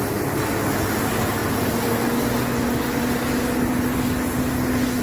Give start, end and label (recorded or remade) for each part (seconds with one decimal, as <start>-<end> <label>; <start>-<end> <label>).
0.0-5.0 recorded